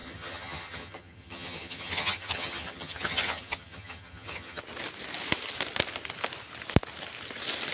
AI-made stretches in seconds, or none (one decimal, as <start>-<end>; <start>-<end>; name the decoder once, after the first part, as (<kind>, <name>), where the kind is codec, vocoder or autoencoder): 0.0-4.6 (vocoder, HiFi-GAN)